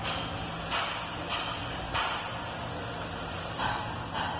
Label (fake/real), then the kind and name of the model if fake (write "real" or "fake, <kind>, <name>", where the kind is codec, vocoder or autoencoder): real